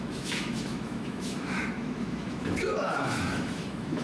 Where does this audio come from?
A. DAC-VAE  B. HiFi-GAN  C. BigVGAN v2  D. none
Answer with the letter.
A